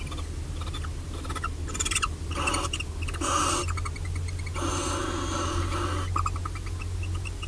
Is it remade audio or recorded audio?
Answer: recorded